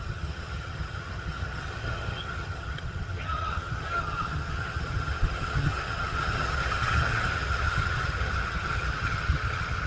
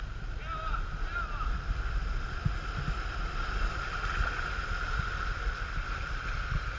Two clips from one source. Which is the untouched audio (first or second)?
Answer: second